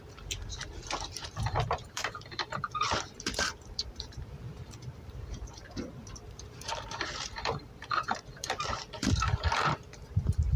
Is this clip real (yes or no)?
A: no